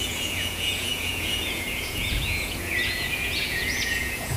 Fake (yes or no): yes